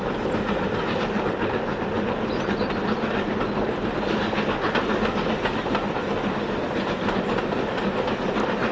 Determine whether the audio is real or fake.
real